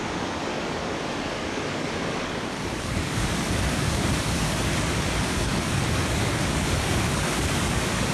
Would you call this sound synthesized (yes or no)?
yes